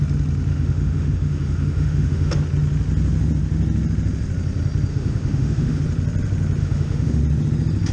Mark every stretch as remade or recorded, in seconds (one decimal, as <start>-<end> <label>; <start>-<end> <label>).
0.0-0.5 recorded; 0.5-2.3 remade; 2.3-4.9 recorded; 4.9-5.8 remade; 5.8-6.6 recorded; 6.6-7.2 remade; 7.2-7.9 recorded